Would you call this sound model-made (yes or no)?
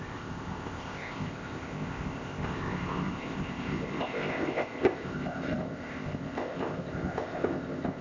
yes